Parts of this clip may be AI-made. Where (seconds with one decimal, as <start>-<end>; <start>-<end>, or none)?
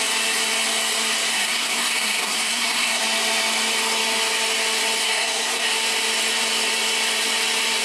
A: 1.3-3.0; 5.0-5.7